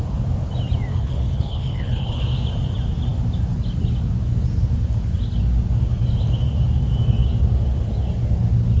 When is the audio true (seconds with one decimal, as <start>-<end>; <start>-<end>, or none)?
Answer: 0.0-0.9; 2.2-8.8